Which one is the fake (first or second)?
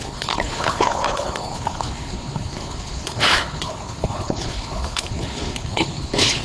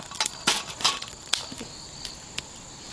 first